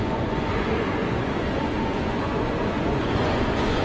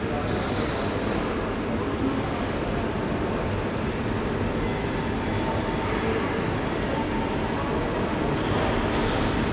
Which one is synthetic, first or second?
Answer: first